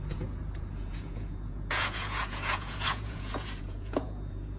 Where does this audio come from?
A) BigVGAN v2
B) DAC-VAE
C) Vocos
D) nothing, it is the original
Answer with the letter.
C